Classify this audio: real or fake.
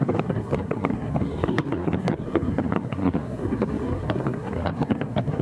fake